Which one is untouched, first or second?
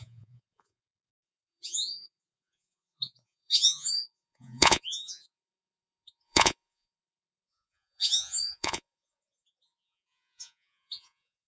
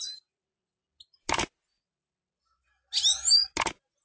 second